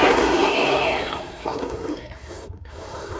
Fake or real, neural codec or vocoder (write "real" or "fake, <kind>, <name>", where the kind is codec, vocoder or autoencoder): fake, codec, SNAC